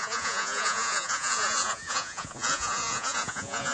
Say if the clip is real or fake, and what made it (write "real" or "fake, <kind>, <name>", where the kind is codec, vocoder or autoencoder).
fake, vocoder, Vocos